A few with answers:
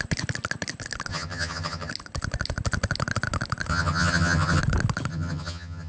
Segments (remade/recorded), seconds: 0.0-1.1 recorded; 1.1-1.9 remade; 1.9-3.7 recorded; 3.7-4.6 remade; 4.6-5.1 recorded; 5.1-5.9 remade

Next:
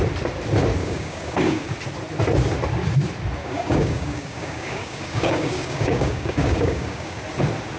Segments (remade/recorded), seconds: 0.0-0.8 recorded; 0.8-1.7 remade; 1.7-3.4 recorded; 3.4-7.2 remade; 7.2-7.8 recorded

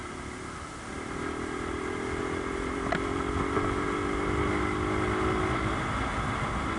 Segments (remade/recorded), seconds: 0.0-6.8 recorded

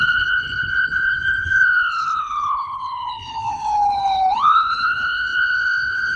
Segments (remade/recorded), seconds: 0.0-6.2 remade

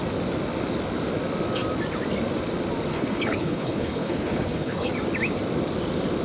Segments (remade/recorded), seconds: 0.0-2.9 recorded; 2.9-4.9 remade; 4.9-6.2 recorded

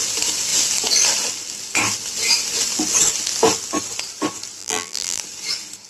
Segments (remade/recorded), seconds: 0.0-4.6 recorded; 4.6-5.2 remade; 5.2-5.9 recorded

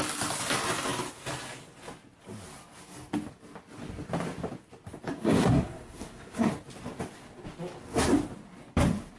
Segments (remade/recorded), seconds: 0.0-5.1 recorded; 5.1-6.5 remade; 6.5-9.2 recorded